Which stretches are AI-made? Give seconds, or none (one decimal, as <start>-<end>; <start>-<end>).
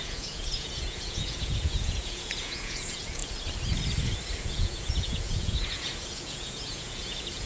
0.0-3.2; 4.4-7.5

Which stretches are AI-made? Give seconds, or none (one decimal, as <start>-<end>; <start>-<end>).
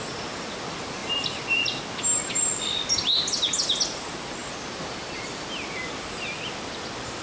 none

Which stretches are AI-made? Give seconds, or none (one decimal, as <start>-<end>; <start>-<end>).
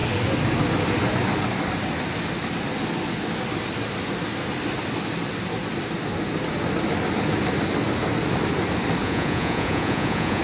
9.0-10.4